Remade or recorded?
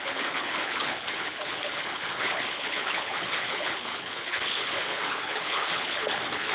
remade